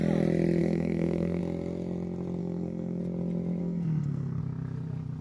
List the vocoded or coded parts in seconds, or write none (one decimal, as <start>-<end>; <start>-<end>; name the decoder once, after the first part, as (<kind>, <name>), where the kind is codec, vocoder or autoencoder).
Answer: 0.6-1.4 (codec, SNAC); 2.4-3.0; 3.6-4.4